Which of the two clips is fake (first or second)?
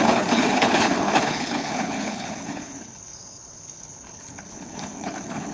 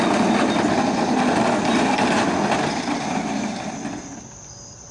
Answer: first